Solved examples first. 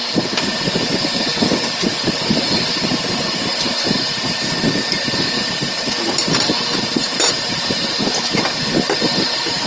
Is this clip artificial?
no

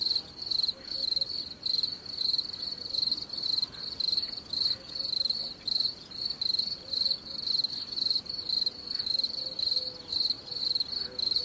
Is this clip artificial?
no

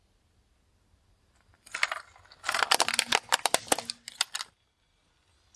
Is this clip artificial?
no